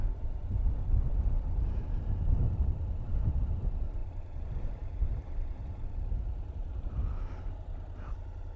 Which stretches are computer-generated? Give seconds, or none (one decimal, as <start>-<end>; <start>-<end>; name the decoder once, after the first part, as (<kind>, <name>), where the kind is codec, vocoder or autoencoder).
4.0-6.9 (vocoder, BigVGAN v2)